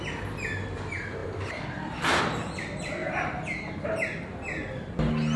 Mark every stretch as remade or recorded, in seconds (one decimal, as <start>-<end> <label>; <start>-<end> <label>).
0.0-1.2 recorded; 1.2-2.2 remade; 2.2-5.4 recorded